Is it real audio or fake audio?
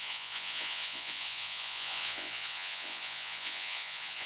fake